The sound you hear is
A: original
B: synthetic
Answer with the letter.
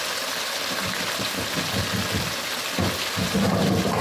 A